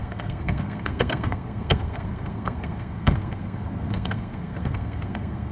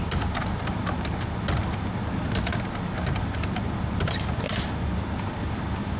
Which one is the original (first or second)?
second